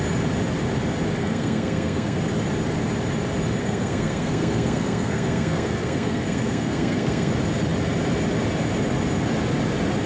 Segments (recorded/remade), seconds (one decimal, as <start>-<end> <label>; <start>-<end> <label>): 0.0-1.2 recorded; 1.2-2.2 remade; 2.2-3.6 recorded; 3.6-7.3 remade; 7.3-10.1 recorded